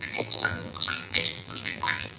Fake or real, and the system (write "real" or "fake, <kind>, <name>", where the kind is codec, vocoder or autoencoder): fake, vocoder, BigVGAN v2